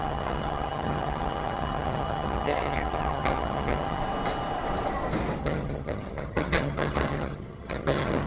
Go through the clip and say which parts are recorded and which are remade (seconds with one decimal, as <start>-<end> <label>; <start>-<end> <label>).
0.0-4.0 remade; 4.0-5.4 recorded; 5.4-8.3 remade